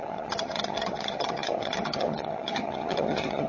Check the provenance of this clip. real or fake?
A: fake